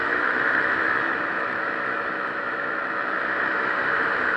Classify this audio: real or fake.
fake